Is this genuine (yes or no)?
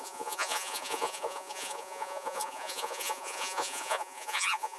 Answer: no